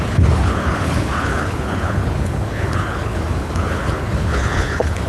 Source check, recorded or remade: remade